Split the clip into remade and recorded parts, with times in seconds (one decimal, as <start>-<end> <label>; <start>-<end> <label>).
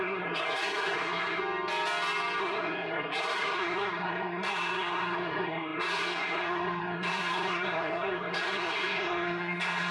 0.0-1.4 remade; 1.4-2.4 recorded; 2.4-9.9 remade